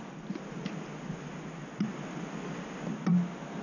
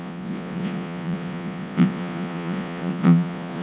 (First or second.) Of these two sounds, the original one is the first